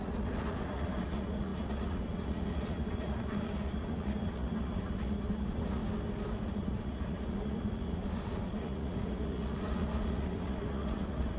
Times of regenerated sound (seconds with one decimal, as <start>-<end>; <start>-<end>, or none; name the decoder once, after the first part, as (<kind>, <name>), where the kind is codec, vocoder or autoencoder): 0.0-5.8 (vocoder, Vocos); 6.5-11.4